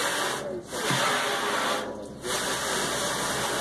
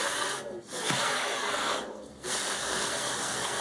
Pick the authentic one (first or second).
first